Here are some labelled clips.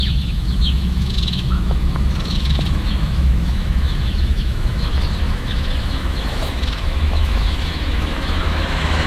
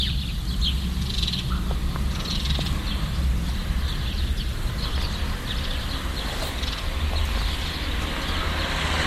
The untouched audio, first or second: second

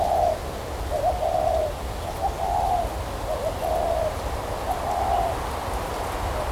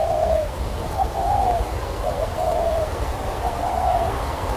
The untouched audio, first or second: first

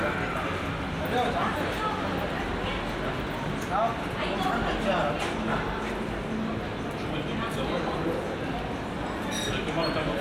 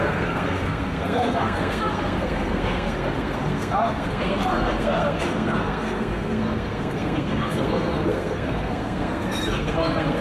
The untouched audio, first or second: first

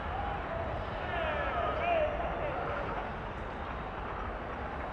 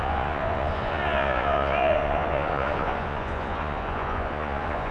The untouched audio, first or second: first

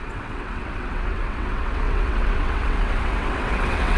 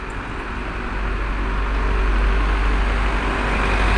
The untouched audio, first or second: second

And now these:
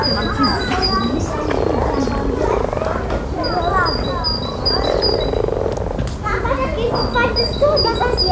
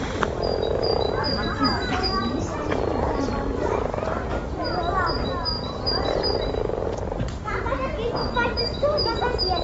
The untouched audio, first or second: first